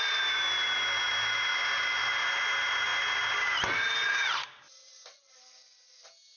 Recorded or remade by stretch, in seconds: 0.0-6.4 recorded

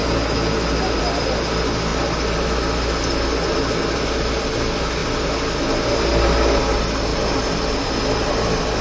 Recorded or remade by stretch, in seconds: 0.0-8.8 recorded

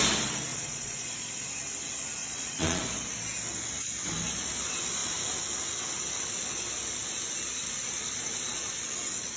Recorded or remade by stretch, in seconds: 0.0-0.5 recorded; 0.5-1.3 remade; 1.3-2.2 recorded; 2.2-2.8 remade; 2.8-9.4 recorded

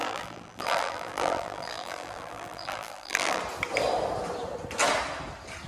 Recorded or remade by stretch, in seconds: 0.0-3.4 remade; 3.4-5.7 recorded

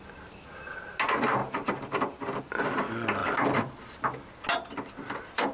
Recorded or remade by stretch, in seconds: 0.0-1.4 recorded; 1.4-2.4 remade; 2.4-5.5 recorded